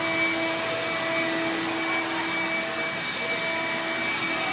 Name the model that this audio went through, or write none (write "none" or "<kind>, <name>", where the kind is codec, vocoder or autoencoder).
none